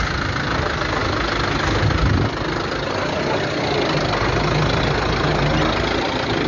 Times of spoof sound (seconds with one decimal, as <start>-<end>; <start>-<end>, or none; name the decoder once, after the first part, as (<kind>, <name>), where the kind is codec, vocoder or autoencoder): none